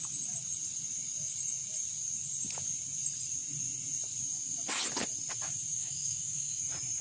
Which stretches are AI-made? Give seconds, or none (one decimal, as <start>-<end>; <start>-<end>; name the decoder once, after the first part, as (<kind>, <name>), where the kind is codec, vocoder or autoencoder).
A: 5.8-6.6 (autoencoder, DAC-VAE)